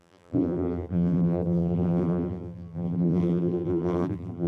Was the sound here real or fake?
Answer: fake